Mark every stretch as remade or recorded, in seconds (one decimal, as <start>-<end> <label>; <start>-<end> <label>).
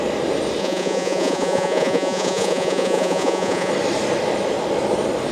0.0-0.6 recorded; 0.6-3.7 remade; 3.7-5.3 recorded